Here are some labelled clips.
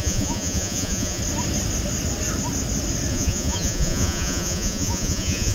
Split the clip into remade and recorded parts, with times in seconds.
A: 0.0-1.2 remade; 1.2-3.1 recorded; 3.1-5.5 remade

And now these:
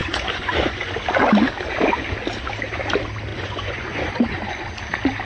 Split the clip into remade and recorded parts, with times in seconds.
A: 0.0-0.9 remade; 0.9-3.3 recorded; 3.3-4.7 remade; 4.7-5.2 recorded

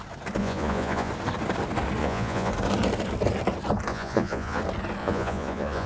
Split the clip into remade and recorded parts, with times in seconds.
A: 0.0-0.4 recorded; 0.4-1.1 remade; 1.1-2.0 recorded; 2.0-2.5 remade; 2.5-3.9 recorded; 3.9-4.6 remade; 4.6-5.0 recorded; 5.0-5.9 remade

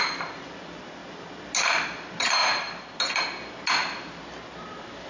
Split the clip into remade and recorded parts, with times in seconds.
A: 0.0-5.1 recorded

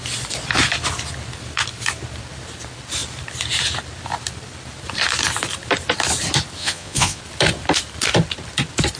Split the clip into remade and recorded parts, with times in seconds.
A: 0.0-6.6 recorded; 6.6-7.2 remade; 7.2-9.0 recorded

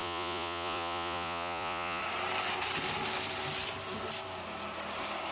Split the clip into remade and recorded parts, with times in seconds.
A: 0.0-2.0 remade; 2.0-5.3 recorded

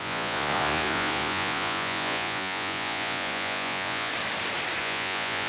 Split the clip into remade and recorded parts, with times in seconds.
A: 0.0-4.1 remade; 4.1-4.8 recorded; 4.8-5.5 remade